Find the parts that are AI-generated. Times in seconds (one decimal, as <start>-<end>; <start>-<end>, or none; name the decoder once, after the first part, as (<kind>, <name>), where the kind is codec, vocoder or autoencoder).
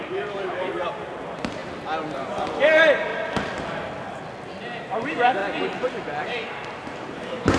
0.0-1.6 (vocoder, BigVGAN v2); 2.1-3.1; 4.8-5.4; 6.2-7.6